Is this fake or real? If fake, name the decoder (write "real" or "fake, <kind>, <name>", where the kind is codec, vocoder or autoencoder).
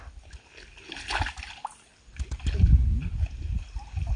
real